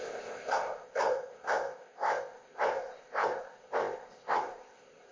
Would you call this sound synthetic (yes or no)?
yes